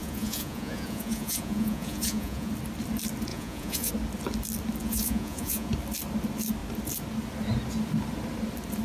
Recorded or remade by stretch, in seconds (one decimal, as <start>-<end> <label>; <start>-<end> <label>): 0.0-2.5 remade; 2.5-3.3 recorded; 3.3-3.9 remade; 3.9-4.8 recorded; 4.8-5.7 remade; 5.7-8.8 recorded